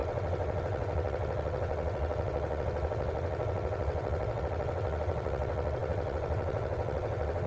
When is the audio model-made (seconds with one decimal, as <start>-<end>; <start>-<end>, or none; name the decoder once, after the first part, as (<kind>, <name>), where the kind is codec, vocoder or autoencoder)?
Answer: 0.0-7.5 (vocoder, WaveNeXt)